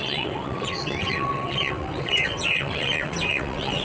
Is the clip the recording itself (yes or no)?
no